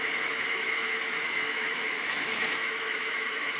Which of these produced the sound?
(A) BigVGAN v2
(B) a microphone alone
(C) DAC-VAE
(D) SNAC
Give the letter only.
C